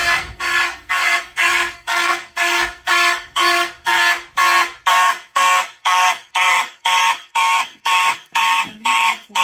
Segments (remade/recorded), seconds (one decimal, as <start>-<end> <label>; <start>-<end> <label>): 0.0-4.0 remade; 4.0-4.9 recorded; 4.9-9.4 remade